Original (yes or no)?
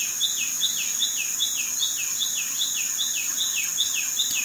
yes